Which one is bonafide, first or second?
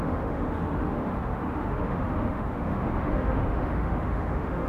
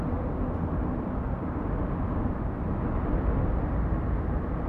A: second